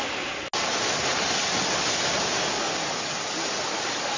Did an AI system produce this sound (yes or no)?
no